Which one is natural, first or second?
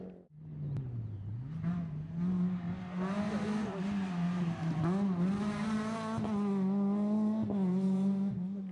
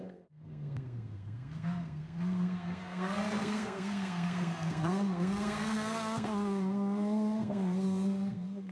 first